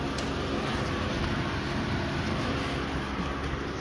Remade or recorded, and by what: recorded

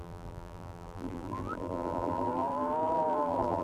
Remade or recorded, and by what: remade, vocoder, BigVGAN v2